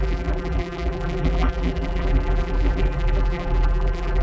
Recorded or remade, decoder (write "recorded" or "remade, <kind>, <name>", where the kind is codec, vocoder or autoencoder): remade, vocoder, BigVGAN v2